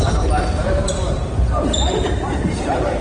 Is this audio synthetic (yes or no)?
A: yes